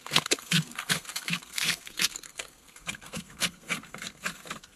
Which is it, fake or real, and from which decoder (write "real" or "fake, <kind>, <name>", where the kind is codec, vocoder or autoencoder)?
fake, codec, SNAC